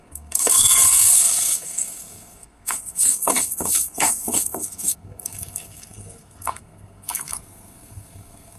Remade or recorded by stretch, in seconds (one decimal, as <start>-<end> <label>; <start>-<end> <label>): 0.0-8.6 remade

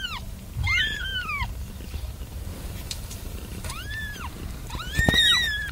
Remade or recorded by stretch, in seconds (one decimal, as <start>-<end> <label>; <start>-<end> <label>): 0.0-1.1 remade; 1.1-1.7 recorded; 1.7-5.7 remade

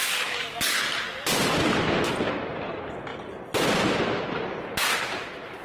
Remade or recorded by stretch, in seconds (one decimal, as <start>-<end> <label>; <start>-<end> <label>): 0.0-0.8 remade; 0.8-5.6 recorded

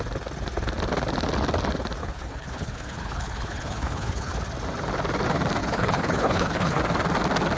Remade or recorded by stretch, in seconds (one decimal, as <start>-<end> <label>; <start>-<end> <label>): 0.0-2.0 recorded; 2.0-4.3 remade; 4.3-5.6 recorded; 5.6-6.8 remade; 6.8-7.6 recorded

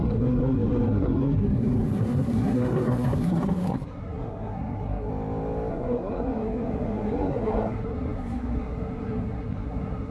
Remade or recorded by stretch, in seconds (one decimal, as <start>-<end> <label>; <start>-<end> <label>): 0.0-5.1 remade; 5.1-5.7 recorded; 5.7-10.1 remade

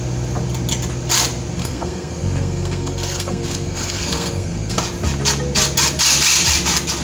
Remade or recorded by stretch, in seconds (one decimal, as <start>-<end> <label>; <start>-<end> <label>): 0.0-1.6 recorded; 1.6-4.8 remade; 4.8-7.0 recorded